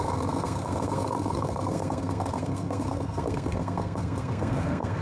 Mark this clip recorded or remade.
remade